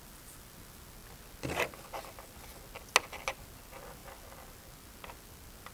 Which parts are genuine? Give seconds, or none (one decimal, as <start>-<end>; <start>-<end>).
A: 0.0-5.7

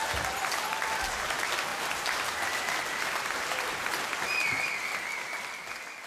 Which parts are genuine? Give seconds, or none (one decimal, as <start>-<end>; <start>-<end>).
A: 0.0-6.1

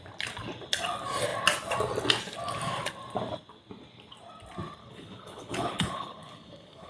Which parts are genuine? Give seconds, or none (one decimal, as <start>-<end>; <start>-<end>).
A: 0.0-4.8